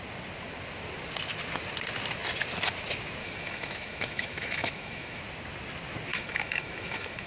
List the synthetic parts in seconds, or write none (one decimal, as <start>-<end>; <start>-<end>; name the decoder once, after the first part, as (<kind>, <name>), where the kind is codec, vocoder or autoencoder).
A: 3.2-5.2 (autoencoder, DAC-VAE); 6.1-7.3